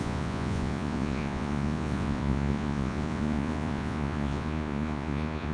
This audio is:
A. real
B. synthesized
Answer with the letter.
B